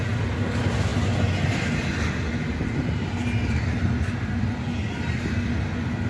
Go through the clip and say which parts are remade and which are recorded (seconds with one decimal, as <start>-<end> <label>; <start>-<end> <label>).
0.0-6.1 recorded